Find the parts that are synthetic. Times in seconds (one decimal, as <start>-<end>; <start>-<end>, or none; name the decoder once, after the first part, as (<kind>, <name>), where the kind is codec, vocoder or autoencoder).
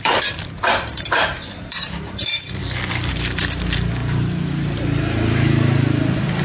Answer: 0.0-2.6 (vocoder, BigVGAN v2); 3.1-4.0; 6.0-6.4